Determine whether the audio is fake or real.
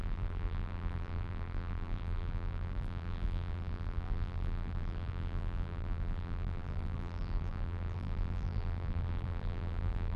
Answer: fake